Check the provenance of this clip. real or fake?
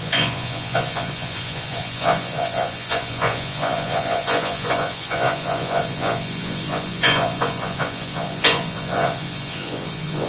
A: fake